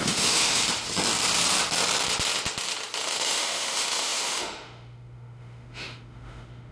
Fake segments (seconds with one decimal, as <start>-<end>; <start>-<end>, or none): 0.0-0.6; 3.0-6.7